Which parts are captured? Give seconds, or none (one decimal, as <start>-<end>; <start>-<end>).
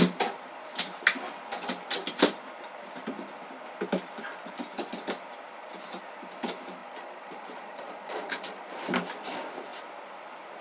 0.0-6.8; 8.9-10.6